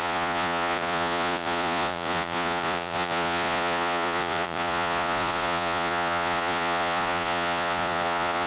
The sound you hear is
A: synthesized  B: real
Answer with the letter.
A